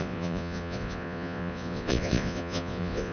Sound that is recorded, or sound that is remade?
remade